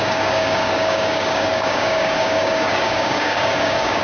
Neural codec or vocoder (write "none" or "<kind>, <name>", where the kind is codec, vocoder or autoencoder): codec, DAC